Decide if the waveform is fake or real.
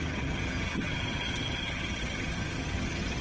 fake